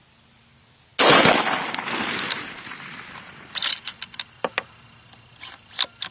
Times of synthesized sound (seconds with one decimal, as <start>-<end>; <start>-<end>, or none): none